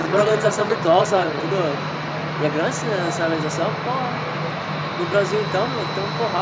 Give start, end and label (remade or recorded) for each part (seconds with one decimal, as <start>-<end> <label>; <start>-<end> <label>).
0.0-1.4 remade; 1.4-6.4 recorded